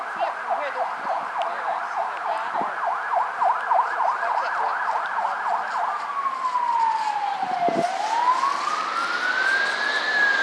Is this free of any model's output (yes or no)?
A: yes